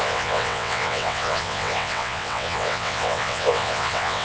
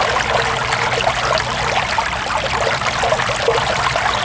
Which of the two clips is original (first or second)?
second